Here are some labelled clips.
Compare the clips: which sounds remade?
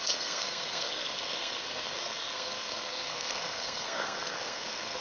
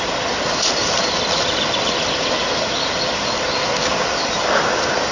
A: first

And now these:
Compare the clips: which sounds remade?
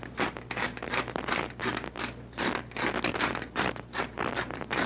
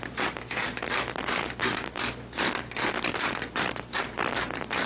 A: second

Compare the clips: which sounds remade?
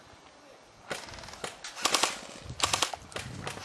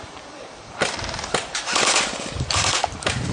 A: second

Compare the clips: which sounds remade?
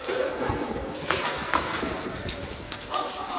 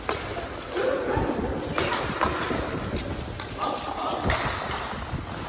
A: first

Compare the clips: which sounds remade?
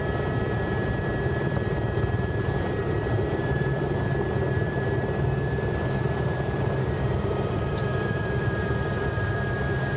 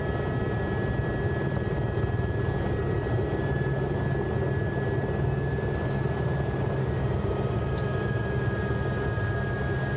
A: first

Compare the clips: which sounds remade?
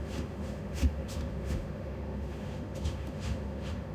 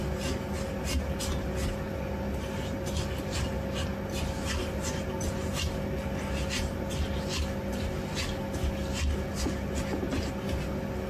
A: first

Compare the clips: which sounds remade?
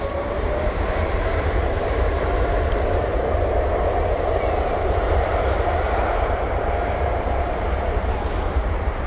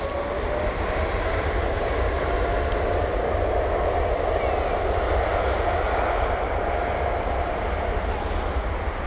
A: first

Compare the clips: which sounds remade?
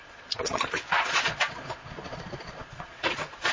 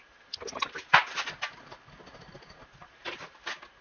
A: first